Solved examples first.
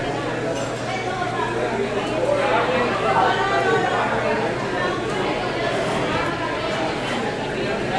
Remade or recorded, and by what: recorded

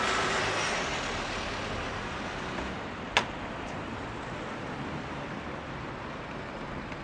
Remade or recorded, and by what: remade, vocoder, BigVGAN v2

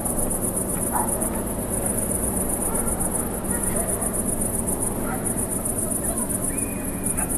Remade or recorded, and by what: recorded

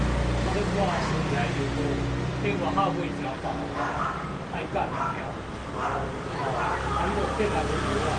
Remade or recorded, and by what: recorded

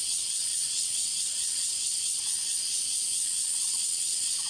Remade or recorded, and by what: remade, vocoder, WaveNeXt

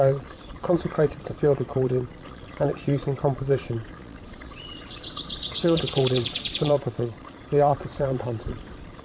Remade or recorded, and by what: remade, vocoder, Vocos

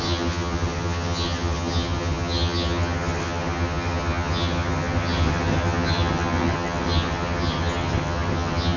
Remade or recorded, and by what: remade, vocoder, HiFi-GAN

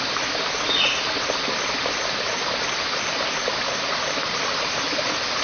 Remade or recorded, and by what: recorded